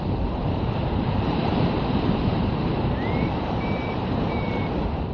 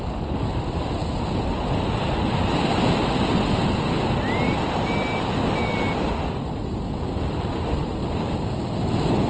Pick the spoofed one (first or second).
first